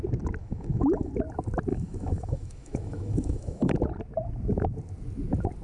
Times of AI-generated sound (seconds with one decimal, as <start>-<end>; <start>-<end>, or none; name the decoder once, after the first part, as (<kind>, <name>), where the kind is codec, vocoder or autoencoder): 0.4-1.1 (autoencoder, DAC-VAE); 1.7-3.7